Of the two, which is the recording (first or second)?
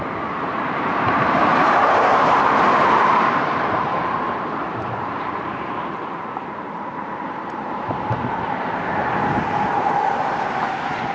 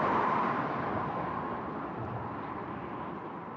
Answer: second